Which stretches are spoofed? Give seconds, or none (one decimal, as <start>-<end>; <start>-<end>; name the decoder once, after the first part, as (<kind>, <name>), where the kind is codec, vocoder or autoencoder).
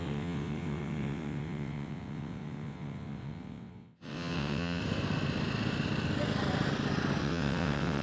0.0-4.8 (vocoder, WaveNeXt); 7.2-8.0